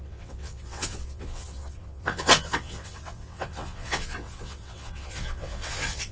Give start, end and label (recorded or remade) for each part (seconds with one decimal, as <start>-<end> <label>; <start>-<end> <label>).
0.0-6.1 remade